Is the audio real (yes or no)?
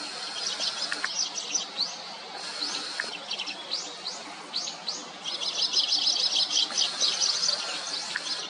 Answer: yes